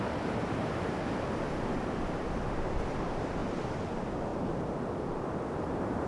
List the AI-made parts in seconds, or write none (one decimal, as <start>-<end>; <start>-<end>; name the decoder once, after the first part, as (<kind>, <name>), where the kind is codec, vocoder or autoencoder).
0.0-3.4 (vocoder, BigVGAN v2); 3.9-4.3; 5.5-6.1

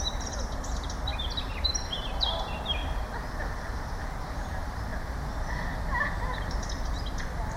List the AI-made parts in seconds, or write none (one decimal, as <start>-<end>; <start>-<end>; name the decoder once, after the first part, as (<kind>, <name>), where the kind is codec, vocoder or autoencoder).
0.0-2.8 (vocoder, BigVGAN v2); 3.8-4.9; 6.2-7.6

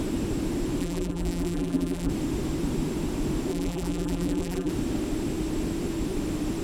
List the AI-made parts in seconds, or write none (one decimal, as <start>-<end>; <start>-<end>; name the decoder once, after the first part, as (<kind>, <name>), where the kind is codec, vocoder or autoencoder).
0.8-2.1 (vocoder, BigVGAN v2); 3.5-4.7

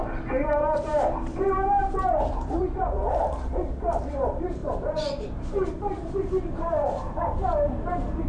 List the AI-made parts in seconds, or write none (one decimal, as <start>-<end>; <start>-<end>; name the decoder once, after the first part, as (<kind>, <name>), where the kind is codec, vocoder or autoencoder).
0.6-8.3 (vocoder, BigVGAN v2)

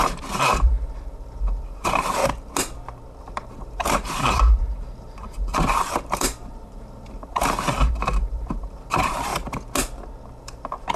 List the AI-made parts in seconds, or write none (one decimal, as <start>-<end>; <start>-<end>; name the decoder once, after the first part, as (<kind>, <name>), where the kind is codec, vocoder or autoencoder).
0.0-2.2 (vocoder, BigVGAN v2); 3.2-9.3; 10.4-11.0

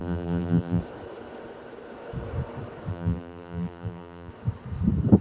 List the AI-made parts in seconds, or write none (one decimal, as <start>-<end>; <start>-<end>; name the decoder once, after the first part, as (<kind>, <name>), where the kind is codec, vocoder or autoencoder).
0.0-0.8 (vocoder, BigVGAN v2); 2.9-4.3

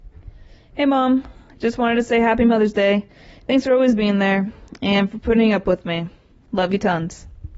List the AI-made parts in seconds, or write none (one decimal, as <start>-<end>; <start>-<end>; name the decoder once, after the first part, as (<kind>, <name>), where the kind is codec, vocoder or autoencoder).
none

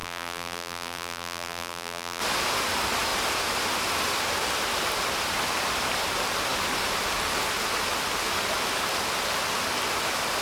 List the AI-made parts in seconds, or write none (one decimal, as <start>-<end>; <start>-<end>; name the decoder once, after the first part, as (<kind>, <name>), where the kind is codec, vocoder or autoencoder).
0.0-2.2 (vocoder, BigVGAN v2)